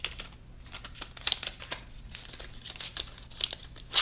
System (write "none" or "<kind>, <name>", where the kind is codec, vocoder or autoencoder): none